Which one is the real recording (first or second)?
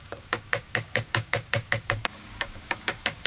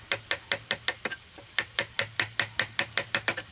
second